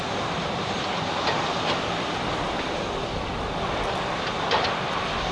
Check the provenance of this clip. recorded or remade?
recorded